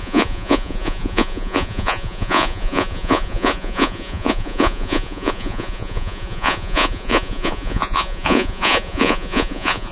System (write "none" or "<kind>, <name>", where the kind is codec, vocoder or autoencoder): vocoder, Vocos